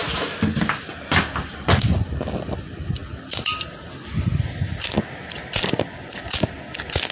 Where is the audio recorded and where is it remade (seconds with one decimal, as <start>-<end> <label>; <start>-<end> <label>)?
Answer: 0.0-7.1 recorded